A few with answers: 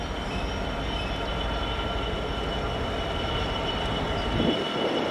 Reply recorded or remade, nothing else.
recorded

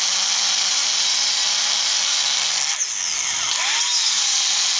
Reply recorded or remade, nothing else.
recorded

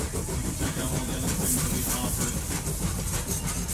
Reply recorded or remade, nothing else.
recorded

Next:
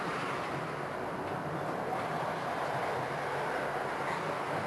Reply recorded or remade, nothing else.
recorded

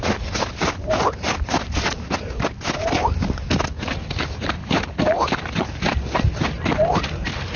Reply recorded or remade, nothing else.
recorded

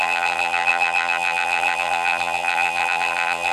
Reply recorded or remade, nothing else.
remade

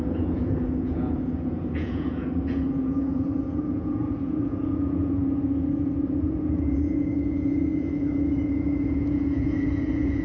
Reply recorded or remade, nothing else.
remade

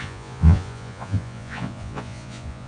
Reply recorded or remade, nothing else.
remade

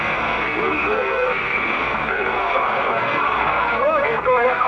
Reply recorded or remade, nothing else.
remade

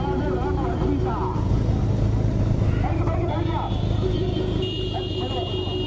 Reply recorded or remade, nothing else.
recorded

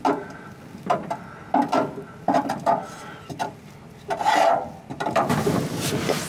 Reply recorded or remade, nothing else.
recorded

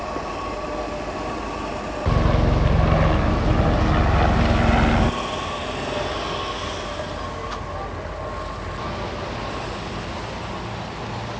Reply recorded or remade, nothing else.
recorded